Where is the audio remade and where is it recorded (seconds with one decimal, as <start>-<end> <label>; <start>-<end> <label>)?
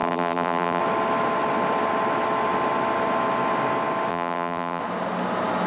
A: 0.0-0.8 remade; 0.8-4.1 recorded; 4.1-4.8 remade; 4.8-5.7 recorded